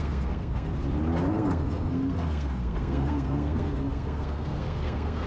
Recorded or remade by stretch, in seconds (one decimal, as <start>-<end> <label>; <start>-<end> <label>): 0.0-0.7 remade; 0.7-1.3 recorded; 1.3-5.3 remade